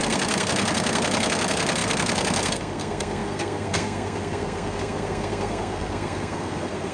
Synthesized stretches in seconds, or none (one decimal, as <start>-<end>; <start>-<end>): 0.0-6.9